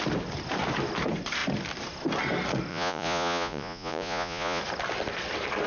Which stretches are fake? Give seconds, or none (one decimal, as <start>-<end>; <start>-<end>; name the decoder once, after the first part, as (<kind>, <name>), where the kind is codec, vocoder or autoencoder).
2.7-4.6 (vocoder, Vocos)